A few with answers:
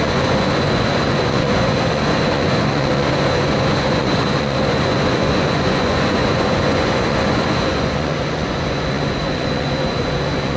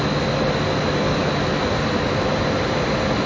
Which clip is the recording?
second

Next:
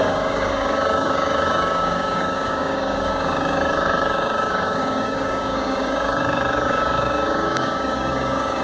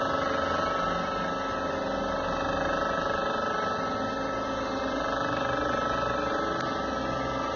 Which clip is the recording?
second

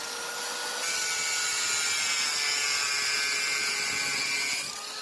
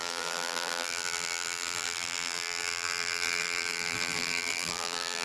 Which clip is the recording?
first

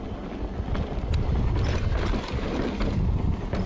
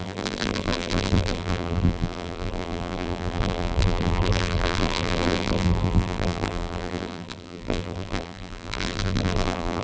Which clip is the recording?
first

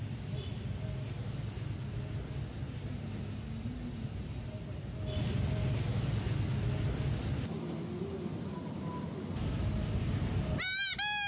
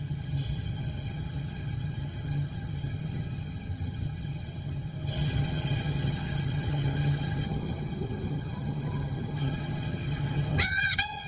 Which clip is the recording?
first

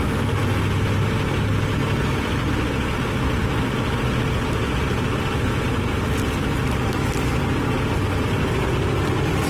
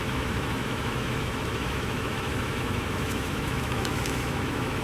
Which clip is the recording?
first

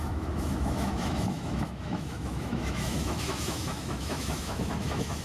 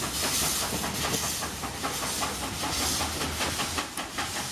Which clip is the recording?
second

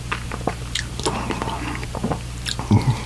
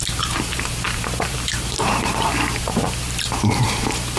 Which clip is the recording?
first